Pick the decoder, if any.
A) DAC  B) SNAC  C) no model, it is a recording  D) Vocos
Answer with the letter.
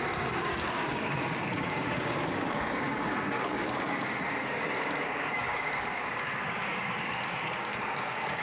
A